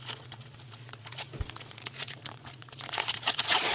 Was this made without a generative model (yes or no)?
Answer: no